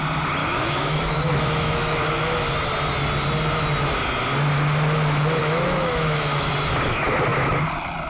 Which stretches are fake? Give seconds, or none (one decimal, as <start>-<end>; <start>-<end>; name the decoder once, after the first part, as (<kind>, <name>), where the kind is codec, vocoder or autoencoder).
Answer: 0.4-2.5 (autoencoder, DAC-VAE); 5.4-6.5